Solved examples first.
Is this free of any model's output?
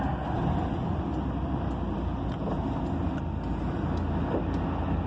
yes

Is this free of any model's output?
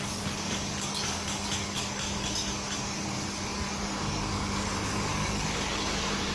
no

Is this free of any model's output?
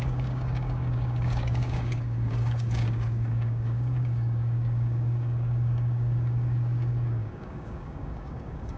no